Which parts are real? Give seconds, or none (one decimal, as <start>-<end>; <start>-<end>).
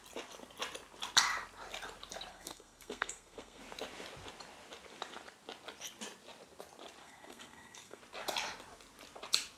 0.0-2.3; 3.6-7.0; 8.0-9.6